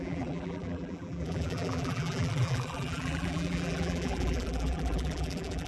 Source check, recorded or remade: remade